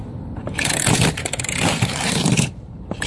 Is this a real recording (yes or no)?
no